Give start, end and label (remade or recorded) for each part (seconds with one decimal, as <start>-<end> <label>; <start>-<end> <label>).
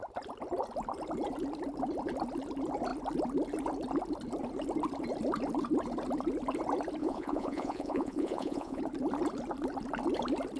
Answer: 0.0-7.0 recorded; 7.0-8.8 remade; 8.8-10.6 recorded